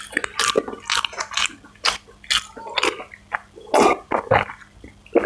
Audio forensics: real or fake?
real